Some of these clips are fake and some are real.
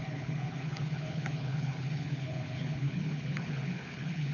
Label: fake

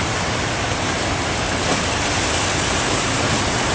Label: real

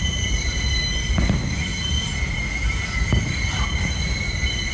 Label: real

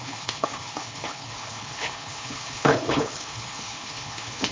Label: fake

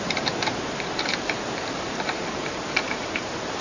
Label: fake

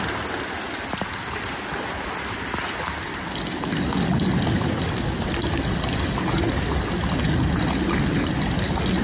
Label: real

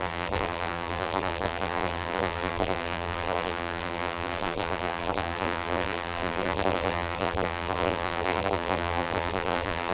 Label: fake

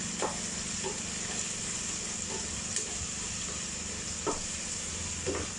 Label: real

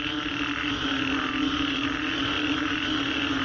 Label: real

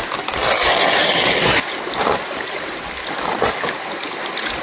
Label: real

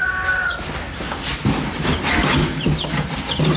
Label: real